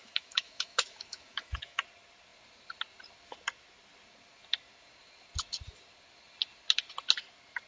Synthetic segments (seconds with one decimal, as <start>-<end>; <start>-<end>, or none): 0.0-1.8